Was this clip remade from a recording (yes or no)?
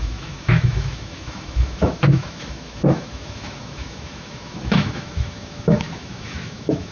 yes